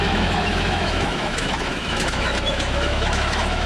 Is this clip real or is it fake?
fake